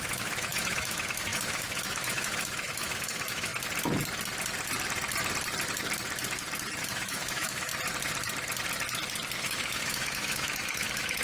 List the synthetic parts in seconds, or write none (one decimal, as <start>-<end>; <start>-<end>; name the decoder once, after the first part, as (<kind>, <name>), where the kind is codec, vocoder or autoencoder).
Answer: 0.0-3.5 (autoencoder, DAC-VAE); 6.8-7.7; 9.4-11.2

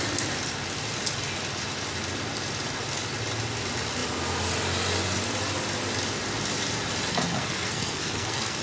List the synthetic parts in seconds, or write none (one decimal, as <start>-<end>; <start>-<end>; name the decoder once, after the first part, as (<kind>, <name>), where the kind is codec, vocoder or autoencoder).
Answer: 7.1-8.6 (codec, SNAC)

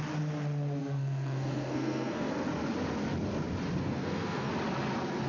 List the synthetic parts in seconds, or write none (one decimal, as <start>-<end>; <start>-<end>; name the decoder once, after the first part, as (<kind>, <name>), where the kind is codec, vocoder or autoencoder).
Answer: 0.8-2.3 (codec, SNAC); 3.8-4.5

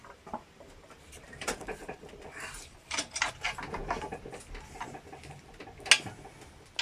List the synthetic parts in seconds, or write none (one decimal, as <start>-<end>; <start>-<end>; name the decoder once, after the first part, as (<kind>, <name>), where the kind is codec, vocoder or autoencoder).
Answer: 0.0-3.3 (vocoder, BigVGAN v2)

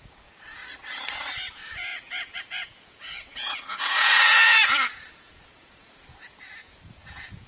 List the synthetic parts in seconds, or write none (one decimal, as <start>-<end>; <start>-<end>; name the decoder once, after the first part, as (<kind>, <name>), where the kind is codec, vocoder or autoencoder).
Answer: 0.0-0.6 (vocoder, Vocos); 1.5-7.5

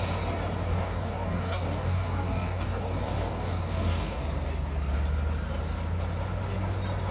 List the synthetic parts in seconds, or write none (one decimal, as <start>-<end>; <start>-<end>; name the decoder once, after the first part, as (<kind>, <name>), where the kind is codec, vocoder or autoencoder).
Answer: 0.7-4.2 (codec, DAC)

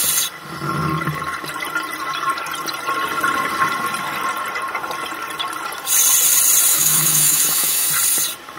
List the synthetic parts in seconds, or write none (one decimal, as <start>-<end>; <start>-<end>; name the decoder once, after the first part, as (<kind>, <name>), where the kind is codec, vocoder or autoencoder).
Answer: 6.7-7.9 (autoencoder, DAC-VAE)